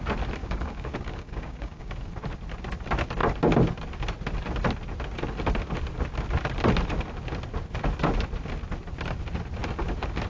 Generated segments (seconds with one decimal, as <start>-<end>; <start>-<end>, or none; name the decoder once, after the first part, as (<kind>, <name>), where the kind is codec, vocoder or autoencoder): 0.4-1.9 (codec, DAC)